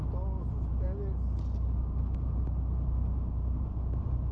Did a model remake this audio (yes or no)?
no